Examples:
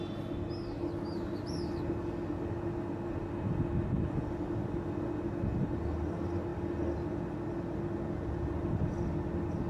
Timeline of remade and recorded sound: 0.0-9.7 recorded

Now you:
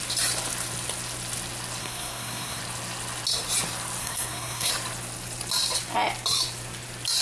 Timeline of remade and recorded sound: 0.0-1.8 recorded; 1.8-2.6 remade; 2.6-4.0 recorded; 4.0-4.7 remade; 4.7-7.2 recorded

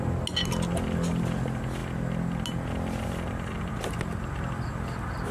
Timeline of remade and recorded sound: 0.0-5.3 recorded

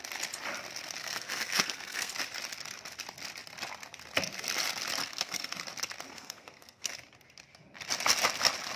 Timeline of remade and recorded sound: 0.0-1.0 recorded; 1.0-2.1 remade; 2.1-5.0 recorded; 5.0-5.5 remade; 5.5-6.1 recorded; 6.1-6.9 remade; 6.9-8.8 recorded

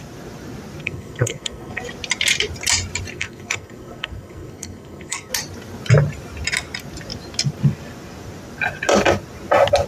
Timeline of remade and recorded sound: 0.0-0.8 recorded; 0.8-1.8 remade; 1.8-3.1 recorded; 3.1-5.3 remade; 5.3-9.9 recorded

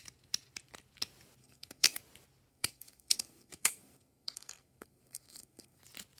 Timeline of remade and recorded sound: 0.0-1.4 recorded; 1.4-2.0 remade; 2.0-2.5 recorded; 2.5-5.8 remade; 5.8-6.2 recorded

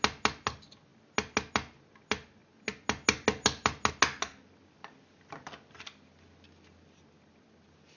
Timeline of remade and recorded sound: 0.0-8.0 recorded